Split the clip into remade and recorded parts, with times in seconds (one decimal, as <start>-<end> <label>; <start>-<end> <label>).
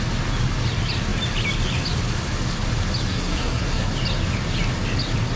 0.0-3.1 recorded; 3.1-3.9 remade; 3.9-5.4 recorded